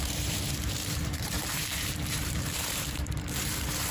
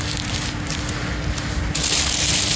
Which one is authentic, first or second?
second